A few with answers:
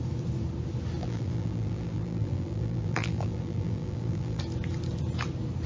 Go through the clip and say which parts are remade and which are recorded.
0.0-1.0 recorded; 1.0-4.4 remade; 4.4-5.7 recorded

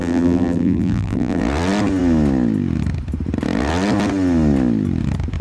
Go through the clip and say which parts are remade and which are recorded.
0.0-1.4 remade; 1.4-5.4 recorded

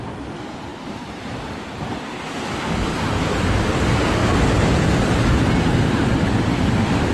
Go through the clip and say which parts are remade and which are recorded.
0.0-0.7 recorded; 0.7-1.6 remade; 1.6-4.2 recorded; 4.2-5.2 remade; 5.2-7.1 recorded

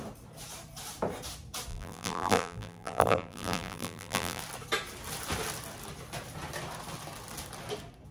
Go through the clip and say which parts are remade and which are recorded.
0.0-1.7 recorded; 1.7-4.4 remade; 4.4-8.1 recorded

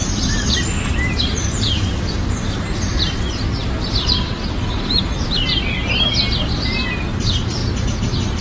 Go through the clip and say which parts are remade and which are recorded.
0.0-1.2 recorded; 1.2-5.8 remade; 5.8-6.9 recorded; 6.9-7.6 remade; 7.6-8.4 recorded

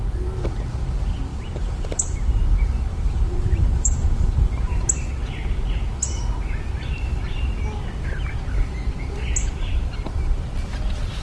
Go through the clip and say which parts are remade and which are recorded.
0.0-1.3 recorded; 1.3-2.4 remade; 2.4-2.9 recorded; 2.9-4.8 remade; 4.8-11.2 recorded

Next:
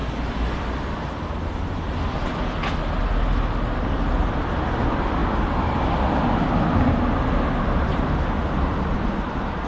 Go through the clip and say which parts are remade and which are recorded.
0.0-7.9 recorded; 7.9-8.6 remade; 8.6-9.7 recorded

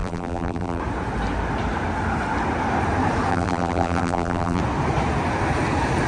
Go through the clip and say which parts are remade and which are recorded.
0.0-0.8 remade; 0.8-3.3 recorded; 3.3-4.6 remade; 4.6-6.1 recorded